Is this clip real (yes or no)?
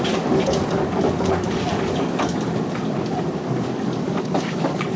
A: no